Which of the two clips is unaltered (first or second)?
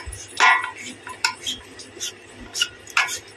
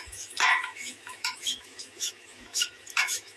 first